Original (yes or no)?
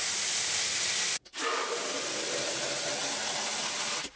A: yes